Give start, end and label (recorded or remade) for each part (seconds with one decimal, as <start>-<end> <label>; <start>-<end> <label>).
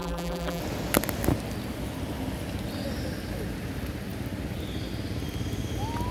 0.0-0.6 remade; 0.6-6.1 recorded